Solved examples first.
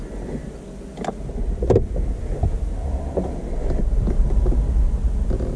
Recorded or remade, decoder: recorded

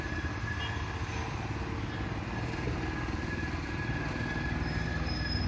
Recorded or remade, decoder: recorded